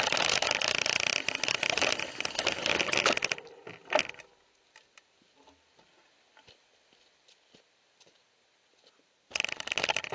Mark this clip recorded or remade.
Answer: recorded